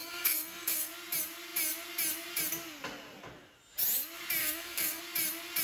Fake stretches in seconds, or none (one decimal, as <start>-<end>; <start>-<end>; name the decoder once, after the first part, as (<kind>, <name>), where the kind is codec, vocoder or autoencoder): 0.0-0.9 (codec, SNAC); 4.4-5.0